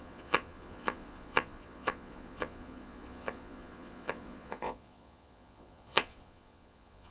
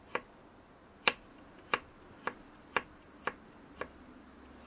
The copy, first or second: first